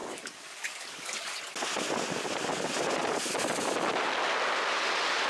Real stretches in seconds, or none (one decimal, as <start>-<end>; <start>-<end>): 1.3-5.3